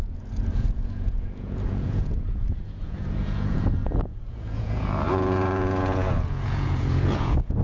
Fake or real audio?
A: fake